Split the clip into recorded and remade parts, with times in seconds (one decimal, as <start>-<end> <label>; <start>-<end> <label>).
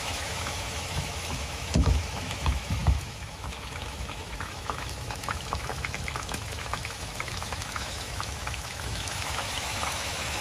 0.0-10.4 remade